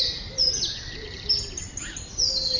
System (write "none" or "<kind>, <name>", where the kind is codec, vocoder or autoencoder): none